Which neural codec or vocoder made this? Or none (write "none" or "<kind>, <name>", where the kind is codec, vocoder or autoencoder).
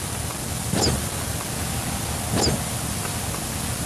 none